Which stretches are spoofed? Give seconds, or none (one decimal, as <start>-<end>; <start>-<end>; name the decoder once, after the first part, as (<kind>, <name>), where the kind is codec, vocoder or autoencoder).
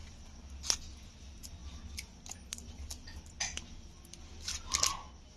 none